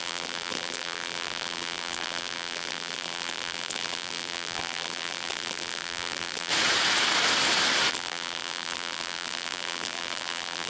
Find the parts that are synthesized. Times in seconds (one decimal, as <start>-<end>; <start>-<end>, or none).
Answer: 0.0-6.5; 7.9-10.7